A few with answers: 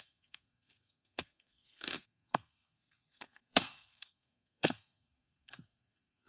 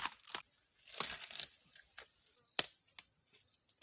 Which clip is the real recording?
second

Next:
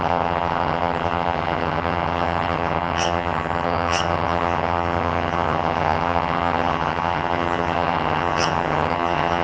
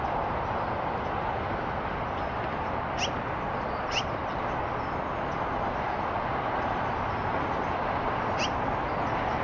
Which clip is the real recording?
second